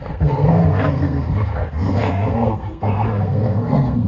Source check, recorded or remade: remade